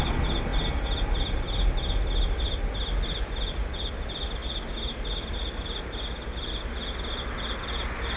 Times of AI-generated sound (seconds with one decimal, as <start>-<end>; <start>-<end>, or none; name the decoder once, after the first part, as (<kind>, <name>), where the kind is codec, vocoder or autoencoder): none